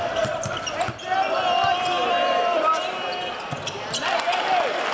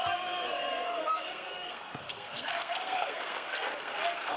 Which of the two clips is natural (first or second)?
first